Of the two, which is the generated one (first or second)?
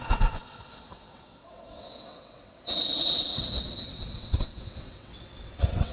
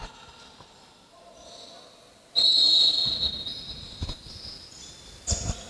first